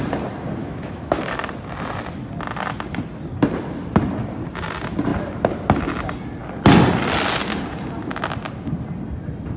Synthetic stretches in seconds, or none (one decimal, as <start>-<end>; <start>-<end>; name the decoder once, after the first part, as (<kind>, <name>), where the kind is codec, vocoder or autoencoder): 0.6-1.2 (autoencoder, DAC-VAE)